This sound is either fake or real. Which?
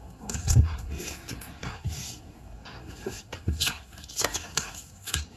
fake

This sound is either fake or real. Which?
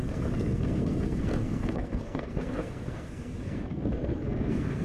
fake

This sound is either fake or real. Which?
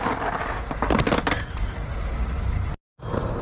real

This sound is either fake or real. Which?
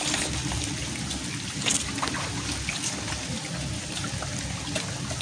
real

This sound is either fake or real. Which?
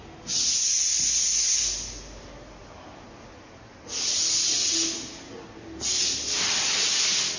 real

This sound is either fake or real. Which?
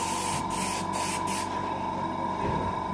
real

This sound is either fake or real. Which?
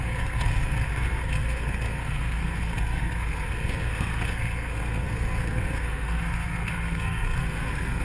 fake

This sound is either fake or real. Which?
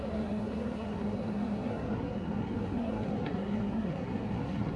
fake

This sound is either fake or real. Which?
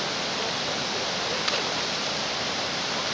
real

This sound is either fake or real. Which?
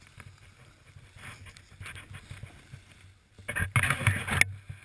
real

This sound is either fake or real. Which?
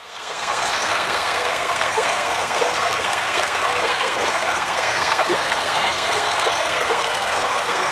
fake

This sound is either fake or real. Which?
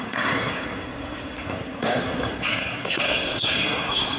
fake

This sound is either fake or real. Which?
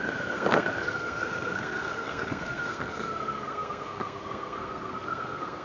fake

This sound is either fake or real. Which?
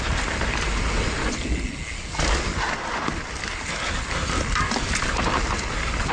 real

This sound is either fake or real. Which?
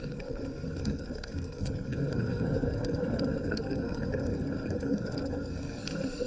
fake